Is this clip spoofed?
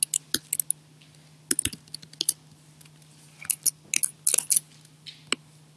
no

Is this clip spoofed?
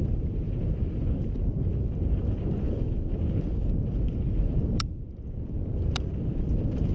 yes